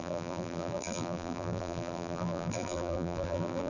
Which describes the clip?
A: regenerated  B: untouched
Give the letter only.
A